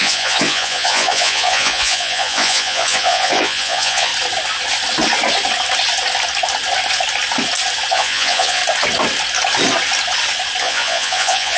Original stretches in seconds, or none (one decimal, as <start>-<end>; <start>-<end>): 4.1-7.9; 8.6-10.6